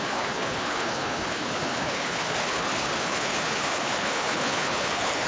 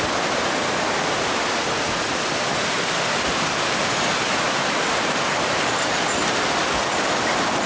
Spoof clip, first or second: first